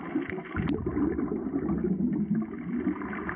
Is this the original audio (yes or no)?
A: yes